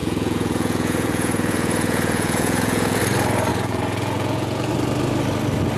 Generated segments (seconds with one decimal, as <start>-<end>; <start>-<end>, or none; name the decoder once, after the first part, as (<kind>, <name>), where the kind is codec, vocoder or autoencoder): 0.0-3.0 (vocoder, Vocos); 3.5-4.7